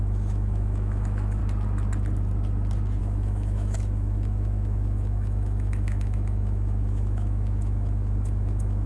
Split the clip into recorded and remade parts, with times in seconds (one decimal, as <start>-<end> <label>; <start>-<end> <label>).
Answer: 0.0-1.4 remade; 1.4-3.0 recorded; 3.0-8.9 remade